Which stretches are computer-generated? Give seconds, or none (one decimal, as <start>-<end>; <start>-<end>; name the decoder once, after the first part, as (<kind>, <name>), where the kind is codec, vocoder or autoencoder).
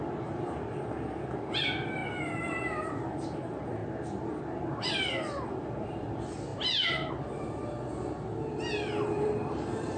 0.0-2.0 (vocoder, BigVGAN v2); 2.9-3.8; 4.9-7.6; 9.1-10.0